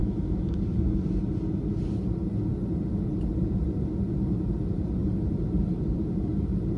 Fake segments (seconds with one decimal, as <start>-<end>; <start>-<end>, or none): 0.0-0.5